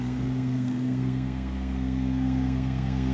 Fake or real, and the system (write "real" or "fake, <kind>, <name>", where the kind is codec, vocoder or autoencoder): fake, codec, SNAC